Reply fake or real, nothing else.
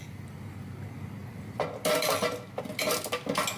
real